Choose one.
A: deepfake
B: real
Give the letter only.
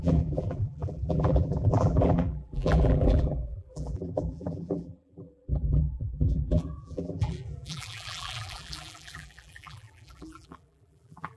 A